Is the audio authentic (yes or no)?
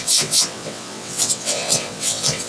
no